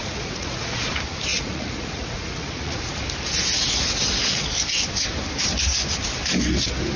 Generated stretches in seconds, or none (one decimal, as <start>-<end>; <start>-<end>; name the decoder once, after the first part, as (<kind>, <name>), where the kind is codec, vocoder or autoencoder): 0.0-0.9 (vocoder, Vocos); 1.3-2.8